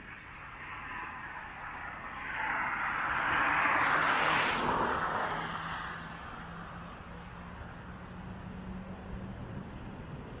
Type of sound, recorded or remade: recorded